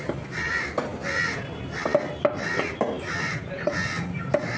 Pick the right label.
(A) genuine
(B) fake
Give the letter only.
A